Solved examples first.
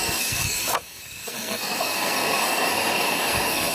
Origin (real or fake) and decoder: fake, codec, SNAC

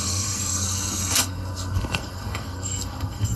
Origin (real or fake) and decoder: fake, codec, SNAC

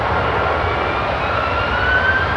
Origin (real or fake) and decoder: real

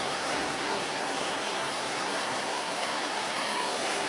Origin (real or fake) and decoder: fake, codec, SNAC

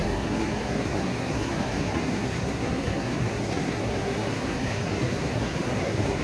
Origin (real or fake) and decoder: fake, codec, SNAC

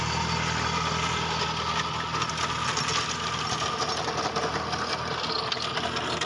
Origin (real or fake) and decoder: real